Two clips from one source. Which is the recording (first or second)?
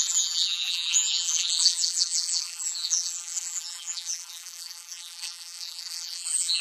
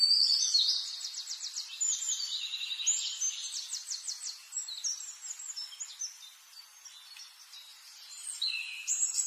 second